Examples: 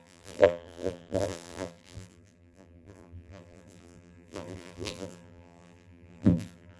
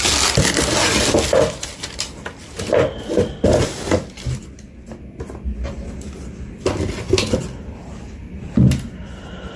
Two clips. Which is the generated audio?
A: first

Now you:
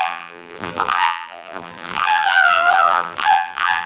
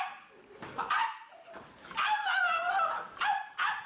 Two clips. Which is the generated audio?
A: first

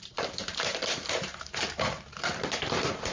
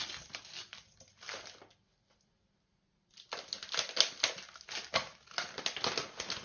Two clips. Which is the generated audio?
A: first